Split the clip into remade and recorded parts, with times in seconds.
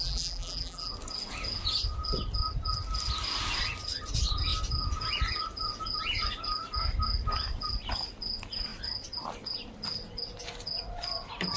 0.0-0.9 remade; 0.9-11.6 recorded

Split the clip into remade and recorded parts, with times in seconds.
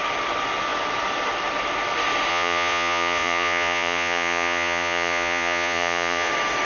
0.0-2.3 recorded; 2.3-6.3 remade; 6.3-6.7 recorded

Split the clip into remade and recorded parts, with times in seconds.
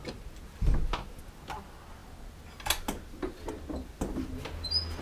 0.0-5.0 recorded